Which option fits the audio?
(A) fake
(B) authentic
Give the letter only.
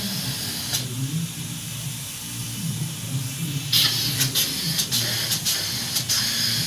B